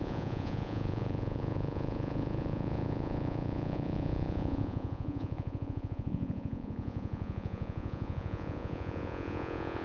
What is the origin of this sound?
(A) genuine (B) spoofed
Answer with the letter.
B